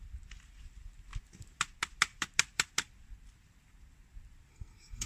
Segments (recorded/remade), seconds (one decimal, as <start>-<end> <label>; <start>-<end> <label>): 0.0-4.5 recorded; 4.5-5.1 remade

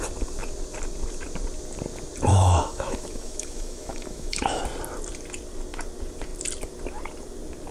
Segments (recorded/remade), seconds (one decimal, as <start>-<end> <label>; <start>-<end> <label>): 0.0-2.3 recorded; 2.3-4.6 remade; 4.6-7.7 recorded

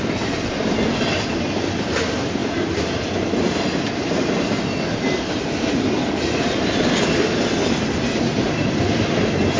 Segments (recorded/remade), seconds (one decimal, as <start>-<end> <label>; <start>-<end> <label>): 0.0-9.6 recorded

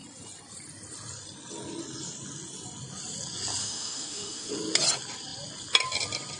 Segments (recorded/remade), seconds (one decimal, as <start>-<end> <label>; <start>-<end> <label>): 0.0-3.6 recorded; 3.6-4.5 remade; 4.5-6.4 recorded

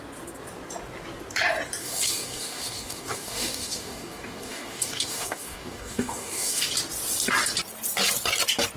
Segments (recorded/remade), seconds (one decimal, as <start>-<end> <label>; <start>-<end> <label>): 0.0-1.8 recorded; 1.8-6.7 remade; 6.7-8.8 recorded

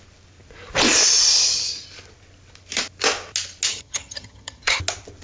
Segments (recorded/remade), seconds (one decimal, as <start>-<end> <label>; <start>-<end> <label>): 0.0-3.7 recorded; 3.7-4.8 remade; 4.8-5.2 recorded

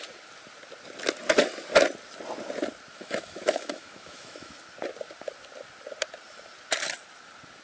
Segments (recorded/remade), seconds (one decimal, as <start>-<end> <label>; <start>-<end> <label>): 0.0-2.9 recorded; 2.9-4.6 remade; 4.6-7.6 recorded

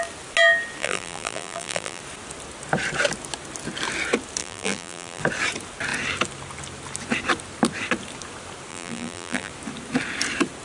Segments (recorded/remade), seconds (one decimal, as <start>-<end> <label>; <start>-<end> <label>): 0.0-0.8 recorded; 0.8-2.0 remade; 2.0-4.4 recorded; 4.4-5.2 remade; 5.2-8.7 recorded; 8.7-9.5 remade; 9.5-10.6 recorded